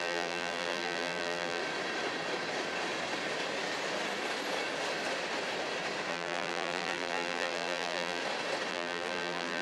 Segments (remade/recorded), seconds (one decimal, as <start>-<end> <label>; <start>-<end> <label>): 0.0-1.6 remade; 1.6-6.1 recorded; 6.1-8.2 remade; 8.2-8.7 recorded; 8.7-9.6 remade

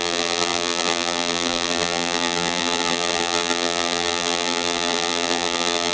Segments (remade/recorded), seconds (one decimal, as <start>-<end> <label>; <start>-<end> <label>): 0.0-5.9 remade

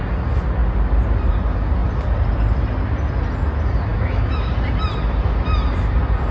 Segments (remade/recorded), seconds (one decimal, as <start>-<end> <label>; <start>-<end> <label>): 0.0-3.9 recorded; 3.9-4.5 remade; 4.5-6.3 recorded